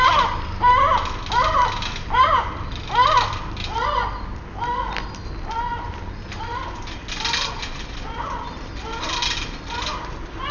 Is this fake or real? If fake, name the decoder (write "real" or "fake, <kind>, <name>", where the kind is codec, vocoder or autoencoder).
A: real